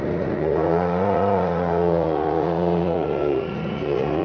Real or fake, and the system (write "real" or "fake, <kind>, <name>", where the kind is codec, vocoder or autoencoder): fake, vocoder, Vocos